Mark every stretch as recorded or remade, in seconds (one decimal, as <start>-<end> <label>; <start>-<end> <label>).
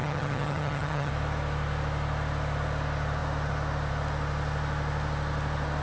0.0-1.1 remade; 1.1-5.8 recorded